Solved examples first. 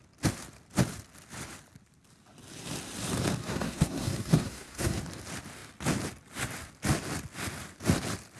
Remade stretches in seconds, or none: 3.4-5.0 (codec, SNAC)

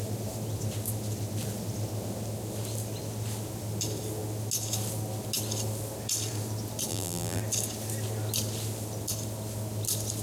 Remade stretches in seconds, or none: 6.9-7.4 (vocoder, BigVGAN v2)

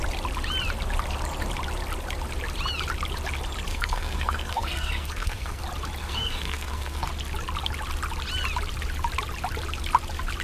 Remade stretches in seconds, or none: 3.7-5.6 (codec, SNAC); 6.0-7.1